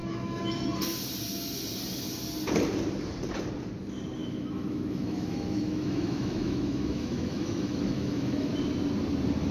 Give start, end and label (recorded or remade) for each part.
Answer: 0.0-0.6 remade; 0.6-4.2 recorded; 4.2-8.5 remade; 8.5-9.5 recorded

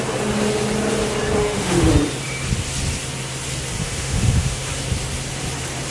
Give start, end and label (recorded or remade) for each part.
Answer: 0.0-1.4 recorded; 1.4-1.9 remade; 1.9-3.8 recorded; 3.8-4.7 remade; 4.7-5.9 recorded

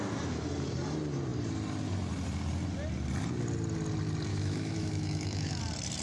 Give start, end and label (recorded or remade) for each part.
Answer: 0.0-4.3 recorded; 4.3-5.6 remade; 5.6-6.0 recorded

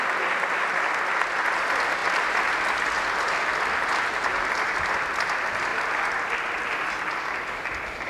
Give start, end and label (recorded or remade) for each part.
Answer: 0.0-8.1 recorded